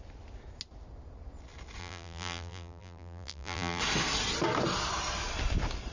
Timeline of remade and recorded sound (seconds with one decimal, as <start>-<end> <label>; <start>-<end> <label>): 0.0-1.8 recorded; 1.8-3.8 remade; 3.8-5.9 recorded